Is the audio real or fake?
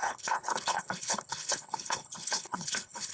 fake